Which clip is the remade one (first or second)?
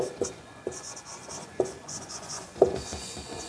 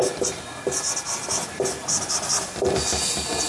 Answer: first